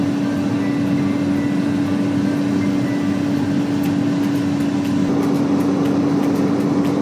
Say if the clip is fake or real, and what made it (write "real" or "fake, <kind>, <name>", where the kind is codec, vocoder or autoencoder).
real